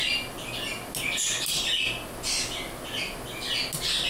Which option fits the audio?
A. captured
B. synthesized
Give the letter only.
A